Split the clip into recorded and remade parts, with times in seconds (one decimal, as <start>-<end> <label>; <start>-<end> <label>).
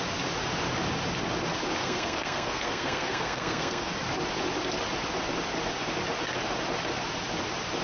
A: 0.0-1.8 recorded; 1.8-3.9 remade; 3.9-7.8 recorded